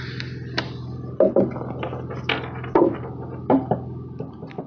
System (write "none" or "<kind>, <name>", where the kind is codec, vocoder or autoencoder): none